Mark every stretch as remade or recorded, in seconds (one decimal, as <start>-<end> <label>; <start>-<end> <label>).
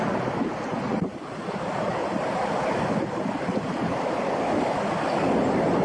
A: 0.0-2.0 recorded; 2.0-5.8 remade